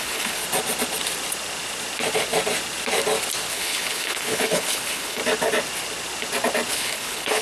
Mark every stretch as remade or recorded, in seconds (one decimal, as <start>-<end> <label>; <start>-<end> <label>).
0.0-0.4 remade; 0.4-3.5 recorded; 3.5-5.2 remade; 5.2-6.7 recorded; 6.7-7.4 remade